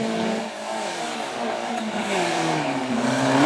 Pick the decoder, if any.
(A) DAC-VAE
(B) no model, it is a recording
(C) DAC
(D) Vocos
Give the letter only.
C